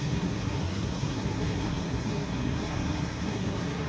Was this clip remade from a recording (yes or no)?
yes